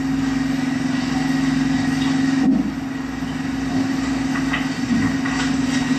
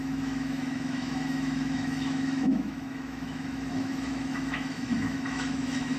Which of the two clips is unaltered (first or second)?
first